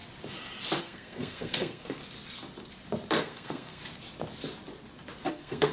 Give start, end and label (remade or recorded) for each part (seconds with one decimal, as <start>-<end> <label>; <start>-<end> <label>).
0.0-0.8 recorded; 0.8-2.0 remade; 2.0-3.2 recorded; 3.2-3.8 remade; 3.8-5.3 recorded; 5.3-5.7 remade